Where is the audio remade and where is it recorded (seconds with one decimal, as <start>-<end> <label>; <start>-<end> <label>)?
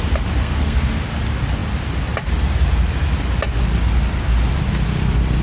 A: 0.0-0.4 recorded; 0.4-1.0 remade; 1.0-5.4 recorded